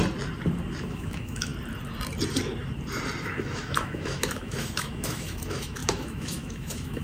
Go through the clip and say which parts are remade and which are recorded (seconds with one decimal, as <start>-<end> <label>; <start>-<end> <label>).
0.0-0.8 recorded; 0.8-1.5 remade; 1.5-3.2 recorded; 3.2-7.0 remade